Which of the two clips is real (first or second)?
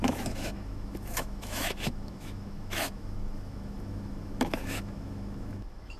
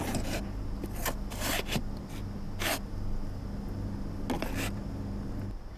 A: second